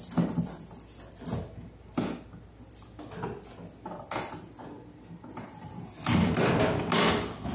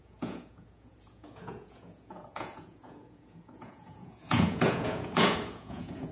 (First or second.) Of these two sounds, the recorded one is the first